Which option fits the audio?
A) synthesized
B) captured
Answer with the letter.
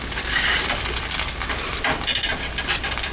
A